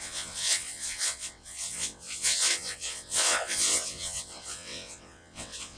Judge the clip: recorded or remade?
remade